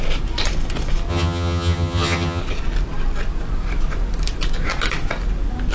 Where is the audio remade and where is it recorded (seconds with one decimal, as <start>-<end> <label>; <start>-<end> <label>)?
0.0-1.1 recorded; 1.1-2.4 remade; 2.4-5.7 recorded